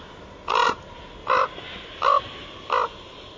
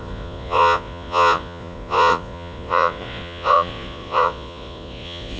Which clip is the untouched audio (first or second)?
first